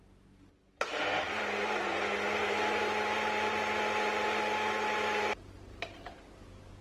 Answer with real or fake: real